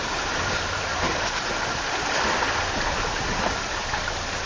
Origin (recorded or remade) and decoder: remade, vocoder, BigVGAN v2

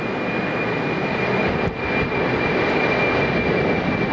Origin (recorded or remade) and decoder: recorded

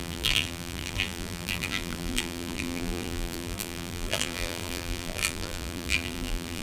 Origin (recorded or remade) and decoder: remade, vocoder, BigVGAN v2